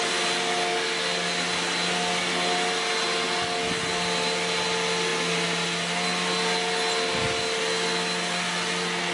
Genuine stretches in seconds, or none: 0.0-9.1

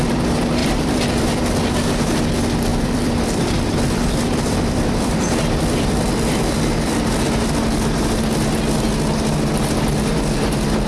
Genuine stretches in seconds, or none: 0.0-0.6; 1.4-2.7; 7.1-10.9

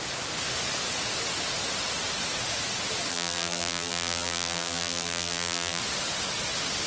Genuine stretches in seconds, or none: 0.0-3.1; 5.8-6.9

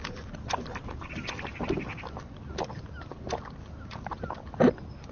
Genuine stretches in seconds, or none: 1.3-5.1

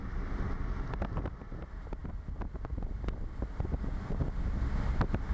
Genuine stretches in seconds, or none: 0.0-5.3

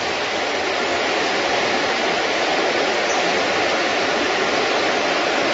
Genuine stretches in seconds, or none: 0.0-0.9; 2.1-3.9; 4.8-5.5

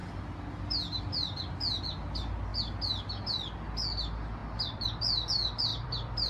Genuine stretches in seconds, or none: 1.0-4.4; 5.0-5.7